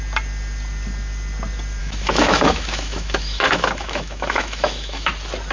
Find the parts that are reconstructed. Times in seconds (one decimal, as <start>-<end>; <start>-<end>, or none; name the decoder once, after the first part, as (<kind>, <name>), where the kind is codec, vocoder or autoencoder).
1.8-5.1 (autoencoder, DAC-VAE)